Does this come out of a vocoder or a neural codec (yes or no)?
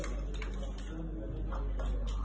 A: no